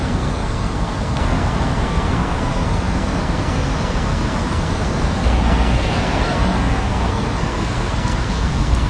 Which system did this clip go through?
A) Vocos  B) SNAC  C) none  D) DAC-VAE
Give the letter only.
B